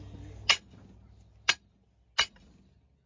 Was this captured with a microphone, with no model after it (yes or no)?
yes